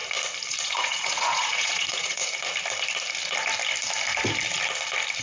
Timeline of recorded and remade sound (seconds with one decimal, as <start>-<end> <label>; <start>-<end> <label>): 0.0-0.5 recorded; 0.5-2.2 remade; 2.2-5.2 recorded